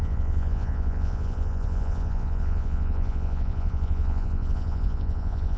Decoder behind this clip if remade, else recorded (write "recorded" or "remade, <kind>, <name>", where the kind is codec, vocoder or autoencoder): remade, vocoder, Vocos